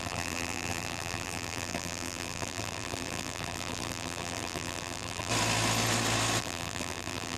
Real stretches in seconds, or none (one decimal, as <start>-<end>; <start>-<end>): 5.3-6.4